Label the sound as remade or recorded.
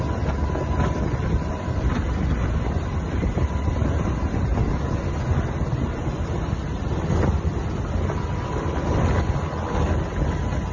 recorded